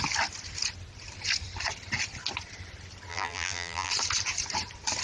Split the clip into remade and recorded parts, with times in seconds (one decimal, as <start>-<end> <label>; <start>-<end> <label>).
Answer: 0.0-3.1 recorded; 3.1-3.9 remade; 3.9-5.0 recorded